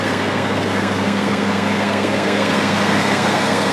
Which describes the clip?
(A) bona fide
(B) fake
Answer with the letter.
B